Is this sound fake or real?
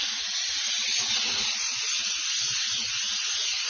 real